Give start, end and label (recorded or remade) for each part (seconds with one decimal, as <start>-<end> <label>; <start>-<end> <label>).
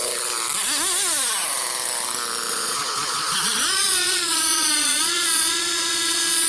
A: 0.0-2.5 recorded; 2.5-6.5 remade